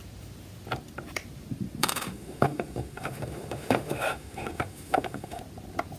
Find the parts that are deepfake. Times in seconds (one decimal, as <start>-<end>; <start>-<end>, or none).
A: 1.8-5.4